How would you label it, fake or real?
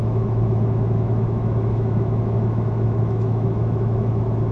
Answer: fake